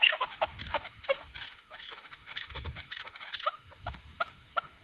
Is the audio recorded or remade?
remade